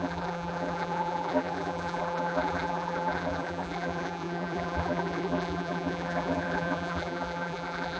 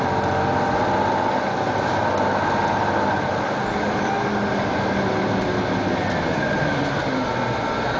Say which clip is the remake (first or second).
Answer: first